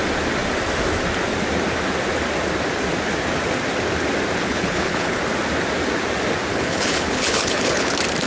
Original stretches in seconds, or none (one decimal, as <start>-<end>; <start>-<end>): 0.0-4.4; 5.2-6.5; 7.9-8.3